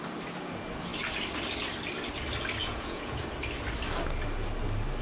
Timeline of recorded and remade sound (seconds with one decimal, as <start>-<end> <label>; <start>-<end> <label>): 0.0-2.6 recorded; 2.6-3.2 remade; 3.2-5.0 recorded